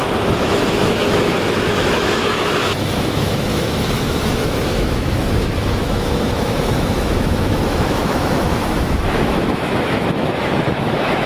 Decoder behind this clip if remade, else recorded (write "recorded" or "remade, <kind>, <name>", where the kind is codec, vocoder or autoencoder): remade, autoencoder, DAC-VAE